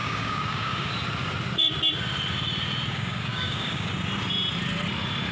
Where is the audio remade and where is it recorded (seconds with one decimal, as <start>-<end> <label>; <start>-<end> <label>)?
0.0-0.9 remade; 0.9-2.9 recorded; 2.9-3.9 remade; 3.9-5.3 recorded